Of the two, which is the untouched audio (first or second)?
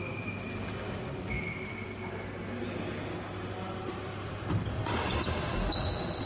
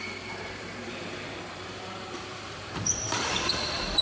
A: first